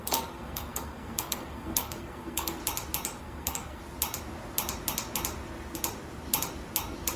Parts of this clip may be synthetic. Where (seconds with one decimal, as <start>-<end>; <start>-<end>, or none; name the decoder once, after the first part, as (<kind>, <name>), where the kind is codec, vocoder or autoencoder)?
0.0-2.6 (codec, SNAC); 3.2-3.8